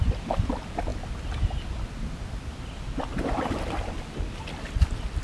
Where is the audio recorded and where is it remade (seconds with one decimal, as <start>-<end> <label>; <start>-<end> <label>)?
0.0-5.2 recorded